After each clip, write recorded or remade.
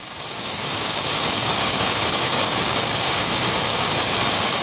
remade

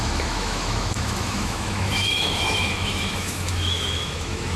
remade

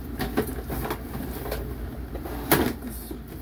recorded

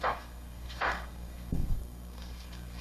remade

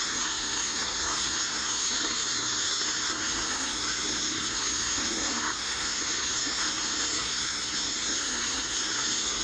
remade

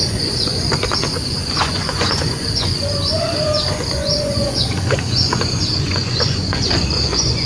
remade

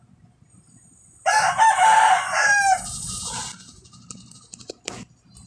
recorded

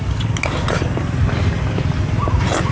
recorded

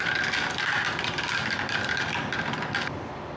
recorded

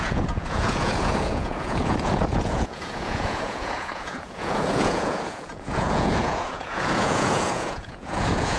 remade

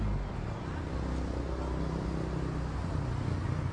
recorded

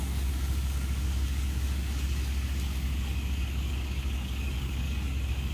remade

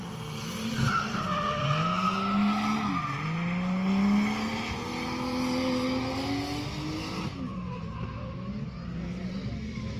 recorded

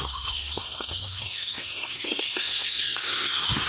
remade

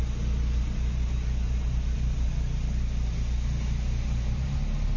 recorded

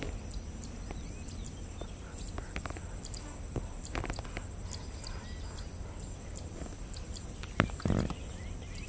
recorded